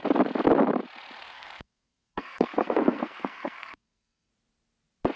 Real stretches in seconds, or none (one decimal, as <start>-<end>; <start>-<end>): 0.0-1.2; 4.3-5.2